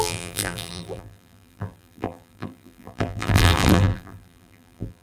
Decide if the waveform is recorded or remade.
remade